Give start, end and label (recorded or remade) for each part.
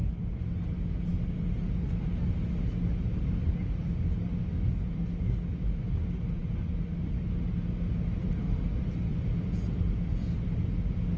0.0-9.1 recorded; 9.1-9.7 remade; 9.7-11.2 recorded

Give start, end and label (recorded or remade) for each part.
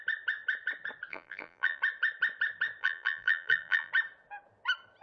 0.0-1.1 recorded; 1.1-1.8 remade; 1.8-2.8 recorded; 2.8-3.9 remade; 3.9-5.0 recorded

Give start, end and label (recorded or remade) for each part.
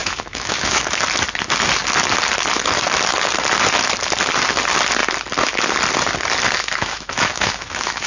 0.0-1.0 remade; 1.0-6.8 recorded; 6.8-8.1 remade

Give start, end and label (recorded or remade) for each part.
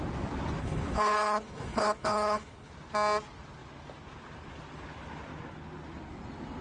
0.0-0.6 recorded; 0.6-2.7 remade; 2.7-6.6 recorded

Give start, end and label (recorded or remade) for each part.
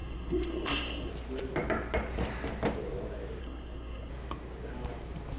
0.0-1.1 remade; 1.1-3.4 recorded; 3.4-4.1 remade; 4.1-5.4 recorded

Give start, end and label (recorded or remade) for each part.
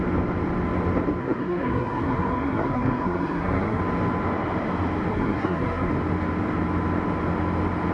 0.0-1.2 recorded; 1.2-3.8 remade; 3.8-5.1 recorded; 5.1-5.9 remade; 5.9-7.9 recorded